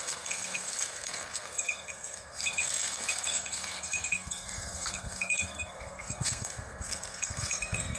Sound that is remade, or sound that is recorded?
remade